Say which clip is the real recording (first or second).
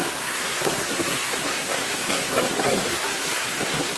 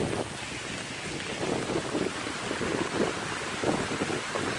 second